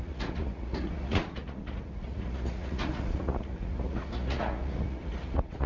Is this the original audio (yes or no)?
no